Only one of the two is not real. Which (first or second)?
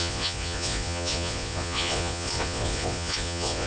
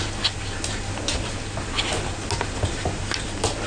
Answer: first